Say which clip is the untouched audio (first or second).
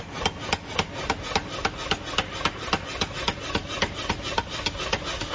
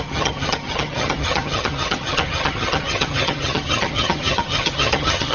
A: first